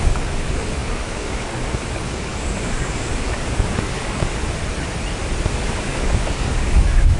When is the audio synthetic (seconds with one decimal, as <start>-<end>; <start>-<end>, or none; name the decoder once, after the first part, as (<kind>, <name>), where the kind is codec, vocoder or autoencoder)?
0.0-4.4 (codec, DAC); 5.5-7.2